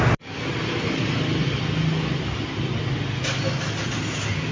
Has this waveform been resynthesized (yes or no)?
no